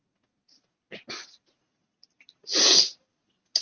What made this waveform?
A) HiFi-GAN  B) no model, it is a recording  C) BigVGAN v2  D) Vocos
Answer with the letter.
B